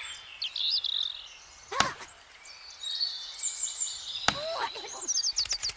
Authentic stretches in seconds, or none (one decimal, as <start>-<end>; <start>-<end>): 0.0-5.8